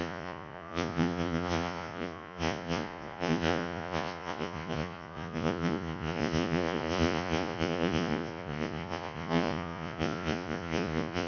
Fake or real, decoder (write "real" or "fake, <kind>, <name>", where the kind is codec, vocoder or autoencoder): fake, vocoder, Vocos